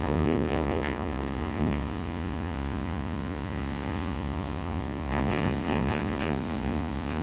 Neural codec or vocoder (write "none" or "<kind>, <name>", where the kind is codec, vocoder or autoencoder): vocoder, Vocos